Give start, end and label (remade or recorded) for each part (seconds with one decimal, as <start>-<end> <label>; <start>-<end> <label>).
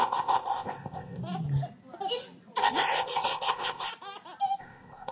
0.0-1.2 remade; 1.2-2.6 recorded; 2.6-3.9 remade; 3.9-4.6 recorded; 4.6-5.1 remade